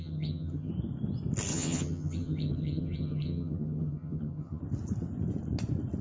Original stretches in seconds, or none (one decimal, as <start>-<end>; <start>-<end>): 0.7-1.5; 4.6-6.0